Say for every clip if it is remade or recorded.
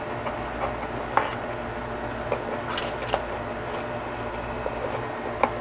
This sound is recorded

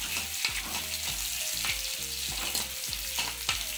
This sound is recorded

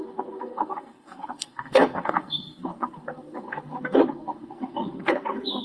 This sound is remade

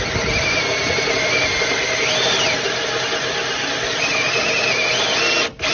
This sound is recorded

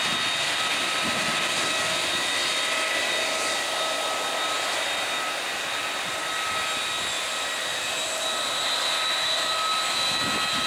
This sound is recorded